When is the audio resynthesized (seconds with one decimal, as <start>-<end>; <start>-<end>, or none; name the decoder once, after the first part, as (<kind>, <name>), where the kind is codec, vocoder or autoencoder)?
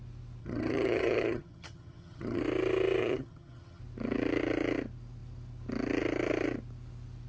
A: 0.4-2.4 (vocoder, HiFi-GAN); 3.0-3.8